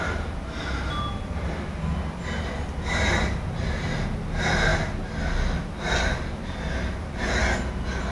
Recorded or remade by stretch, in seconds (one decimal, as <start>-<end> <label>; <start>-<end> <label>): 0.0-8.1 recorded